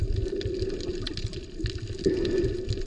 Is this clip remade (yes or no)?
no